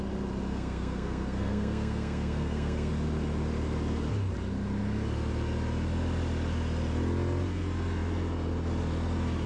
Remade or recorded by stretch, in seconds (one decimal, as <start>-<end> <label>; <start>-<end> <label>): 0.0-0.5 recorded; 0.5-2.9 remade; 2.9-9.5 recorded